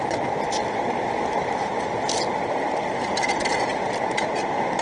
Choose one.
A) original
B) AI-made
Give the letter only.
A